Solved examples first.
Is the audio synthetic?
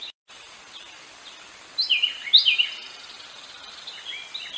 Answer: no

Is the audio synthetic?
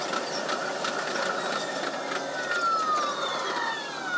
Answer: no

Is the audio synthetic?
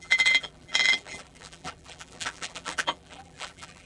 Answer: yes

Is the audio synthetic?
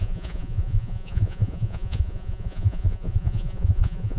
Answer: yes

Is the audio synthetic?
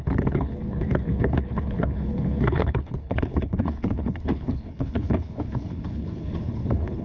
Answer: yes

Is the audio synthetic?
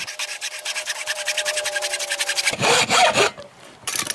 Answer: yes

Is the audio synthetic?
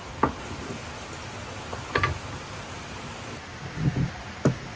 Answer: no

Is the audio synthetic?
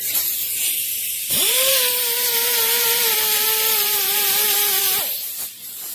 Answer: yes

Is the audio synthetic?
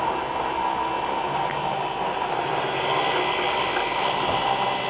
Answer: no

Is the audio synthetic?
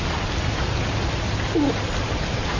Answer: no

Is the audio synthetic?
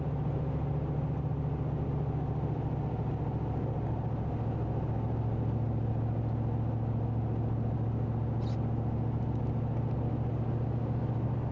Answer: no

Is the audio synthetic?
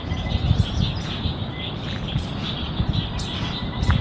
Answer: no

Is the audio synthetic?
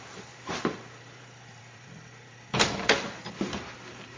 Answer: yes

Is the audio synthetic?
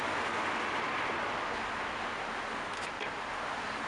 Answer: no